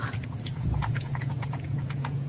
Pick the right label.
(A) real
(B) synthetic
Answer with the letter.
B